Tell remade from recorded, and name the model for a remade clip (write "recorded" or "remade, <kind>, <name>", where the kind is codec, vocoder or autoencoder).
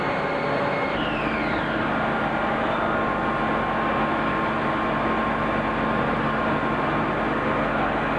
recorded